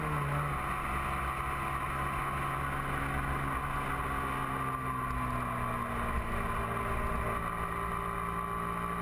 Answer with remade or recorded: recorded